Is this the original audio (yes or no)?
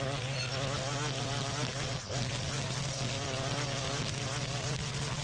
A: yes